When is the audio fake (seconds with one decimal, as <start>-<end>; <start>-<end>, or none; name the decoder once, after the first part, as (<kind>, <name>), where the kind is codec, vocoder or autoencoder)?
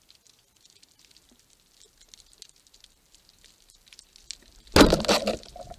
none